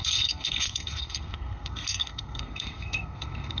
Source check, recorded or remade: remade